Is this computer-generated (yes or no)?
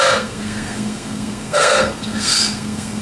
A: yes